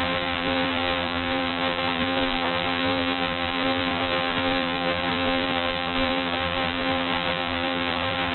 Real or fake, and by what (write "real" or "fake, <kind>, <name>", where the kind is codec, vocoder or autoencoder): fake, vocoder, BigVGAN v2